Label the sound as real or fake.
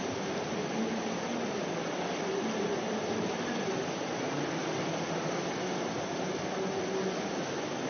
real